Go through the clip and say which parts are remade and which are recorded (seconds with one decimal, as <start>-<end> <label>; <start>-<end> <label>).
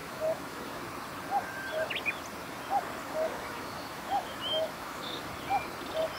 0.0-0.8 remade; 0.8-3.0 recorded; 3.0-5.2 remade; 5.2-6.2 recorded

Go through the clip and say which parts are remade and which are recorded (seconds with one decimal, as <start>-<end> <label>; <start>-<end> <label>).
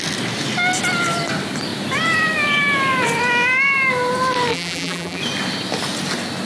0.0-4.5 recorded; 4.5-5.2 remade; 5.2-6.5 recorded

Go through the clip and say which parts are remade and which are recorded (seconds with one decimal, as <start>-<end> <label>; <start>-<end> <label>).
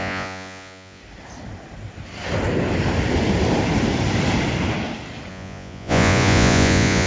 0.0-1.0 remade; 1.0-5.3 recorded; 5.3-7.1 remade